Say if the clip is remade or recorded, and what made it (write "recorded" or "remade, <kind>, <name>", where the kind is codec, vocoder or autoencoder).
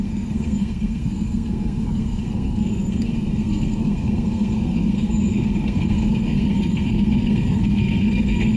remade, codec, SNAC